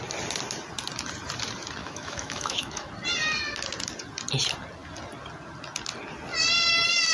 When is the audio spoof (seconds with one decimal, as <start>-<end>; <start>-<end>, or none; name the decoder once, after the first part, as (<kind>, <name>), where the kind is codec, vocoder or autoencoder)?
1.8-2.9 (autoencoder, DAC-VAE)